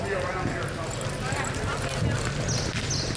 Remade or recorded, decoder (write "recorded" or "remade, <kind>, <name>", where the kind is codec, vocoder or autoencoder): recorded